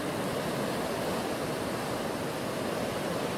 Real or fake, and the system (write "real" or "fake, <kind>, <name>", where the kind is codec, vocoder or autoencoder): real